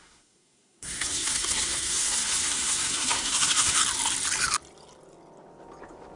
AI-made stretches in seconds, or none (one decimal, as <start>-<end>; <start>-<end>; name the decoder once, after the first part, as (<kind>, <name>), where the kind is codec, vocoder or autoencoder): 0.0-3.8 (codec, SNAC)